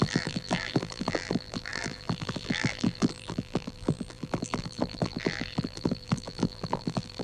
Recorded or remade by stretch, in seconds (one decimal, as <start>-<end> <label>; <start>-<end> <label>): 0.0-7.2 remade